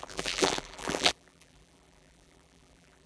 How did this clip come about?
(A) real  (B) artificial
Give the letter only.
B